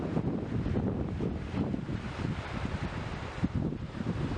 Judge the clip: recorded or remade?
recorded